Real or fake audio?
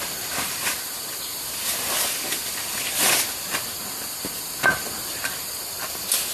real